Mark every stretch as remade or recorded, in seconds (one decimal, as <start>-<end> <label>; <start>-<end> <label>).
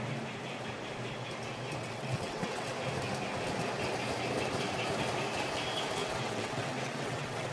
0.0-1.8 recorded; 1.8-2.7 remade; 2.7-6.0 recorded; 6.0-7.5 remade